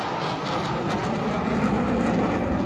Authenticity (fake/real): real